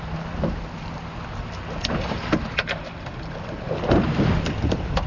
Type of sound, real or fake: real